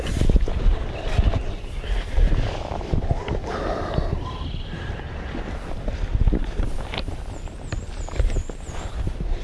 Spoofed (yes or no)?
no